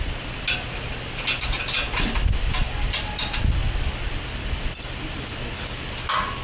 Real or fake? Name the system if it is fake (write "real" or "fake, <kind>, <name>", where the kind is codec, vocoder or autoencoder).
real